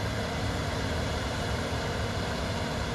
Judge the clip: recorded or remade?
remade